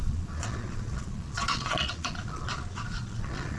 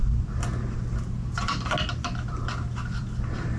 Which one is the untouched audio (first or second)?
second